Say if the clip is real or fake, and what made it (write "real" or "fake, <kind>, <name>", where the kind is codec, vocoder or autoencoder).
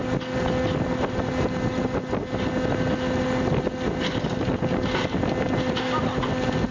real